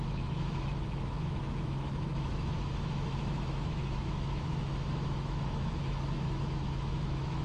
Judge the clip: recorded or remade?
remade